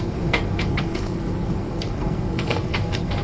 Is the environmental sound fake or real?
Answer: fake